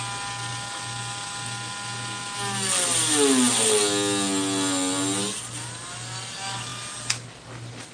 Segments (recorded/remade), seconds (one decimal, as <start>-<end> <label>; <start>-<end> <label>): 0.0-7.9 recorded